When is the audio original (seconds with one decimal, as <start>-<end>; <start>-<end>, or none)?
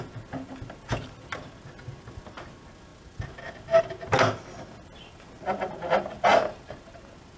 0.0-6.3; 7.0-7.4